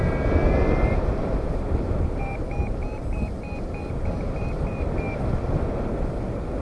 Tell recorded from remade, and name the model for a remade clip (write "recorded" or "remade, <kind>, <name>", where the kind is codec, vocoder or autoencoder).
recorded